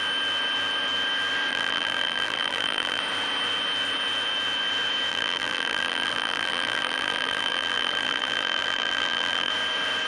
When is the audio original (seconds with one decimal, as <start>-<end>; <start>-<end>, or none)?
0.0-1.5; 3.0-5.1; 9.5-10.1